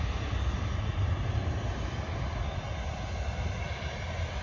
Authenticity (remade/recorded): recorded